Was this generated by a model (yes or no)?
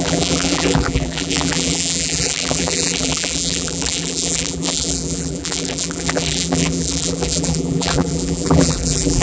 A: yes